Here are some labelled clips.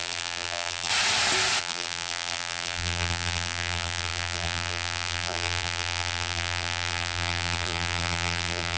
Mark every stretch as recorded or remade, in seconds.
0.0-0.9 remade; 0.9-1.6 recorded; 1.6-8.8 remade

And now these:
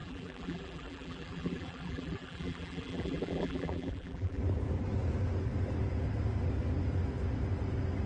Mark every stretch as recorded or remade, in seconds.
0.0-4.4 remade; 4.4-8.1 recorded

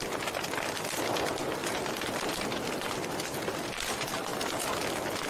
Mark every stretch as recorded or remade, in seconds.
0.0-1.6 recorded; 1.6-3.4 remade; 3.4-5.3 recorded

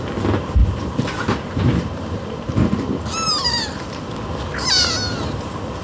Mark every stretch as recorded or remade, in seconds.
0.0-0.6 recorded; 0.6-4.1 remade; 4.1-4.5 recorded; 4.5-5.3 remade; 5.3-5.8 recorded

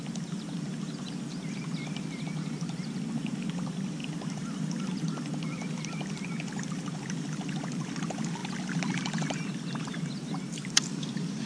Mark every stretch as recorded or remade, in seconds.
0.0-4.0 recorded; 4.0-4.9 remade; 4.9-11.5 recorded

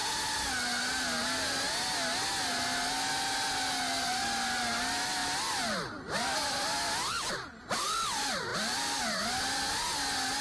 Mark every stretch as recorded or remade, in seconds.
0.0-8.5 recorded; 8.5-9.4 remade; 9.4-10.4 recorded